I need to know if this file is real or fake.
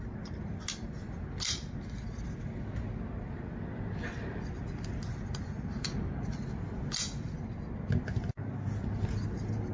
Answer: real